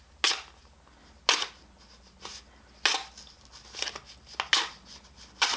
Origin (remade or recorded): recorded